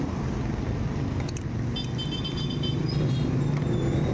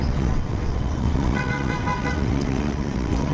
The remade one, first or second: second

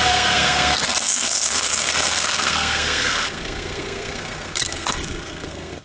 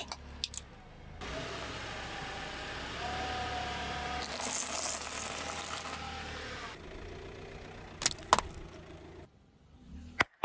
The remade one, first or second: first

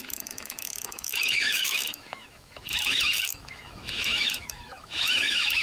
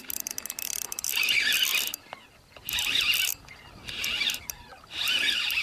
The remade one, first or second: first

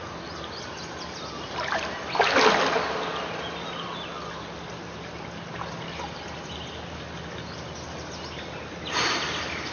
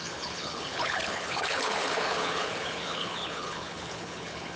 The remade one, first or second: second